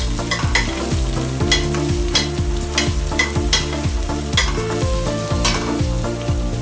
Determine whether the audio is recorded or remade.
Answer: recorded